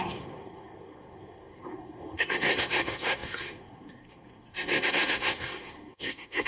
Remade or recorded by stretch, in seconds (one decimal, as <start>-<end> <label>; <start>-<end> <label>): 0.0-6.5 remade